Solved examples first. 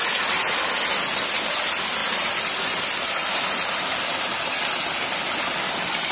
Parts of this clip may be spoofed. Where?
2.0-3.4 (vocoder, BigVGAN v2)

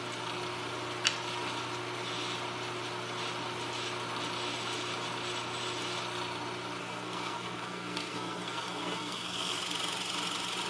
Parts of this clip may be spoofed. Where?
6.8-9.6 (codec, SNAC)

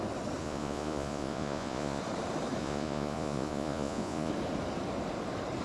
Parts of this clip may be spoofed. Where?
0.4-2.0 (vocoder, Vocos); 2.6-4.3

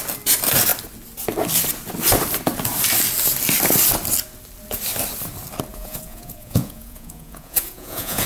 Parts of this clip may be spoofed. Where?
5.7-8.3 (vocoder, Vocos)

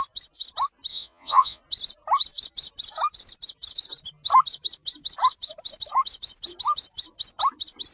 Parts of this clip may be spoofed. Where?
0.9-1.6 (vocoder, Vocos)

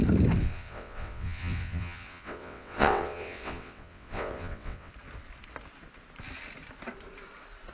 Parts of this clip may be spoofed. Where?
0.4-4.9 (vocoder, WaveNeXt)

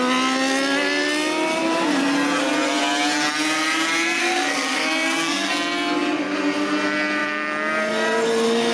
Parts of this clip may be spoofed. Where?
4.2-5.5 (codec, SNAC)